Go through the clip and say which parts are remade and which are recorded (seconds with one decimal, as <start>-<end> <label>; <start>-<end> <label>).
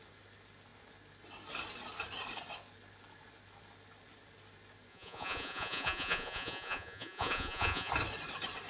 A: 0.0-4.9 recorded; 4.9-7.9 remade; 7.9-8.7 recorded